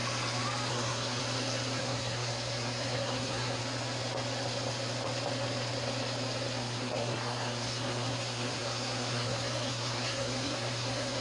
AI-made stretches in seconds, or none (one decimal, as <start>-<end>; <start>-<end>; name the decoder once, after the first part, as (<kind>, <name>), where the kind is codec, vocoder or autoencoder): 0.7-1.2 (codec, SNAC); 1.8-3.6; 6.6-11.2